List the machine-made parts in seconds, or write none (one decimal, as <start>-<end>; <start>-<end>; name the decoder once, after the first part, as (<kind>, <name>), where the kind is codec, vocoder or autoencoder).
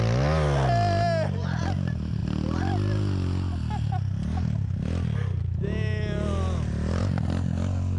none